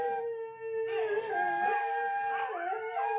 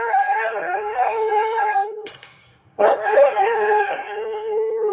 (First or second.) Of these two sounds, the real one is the first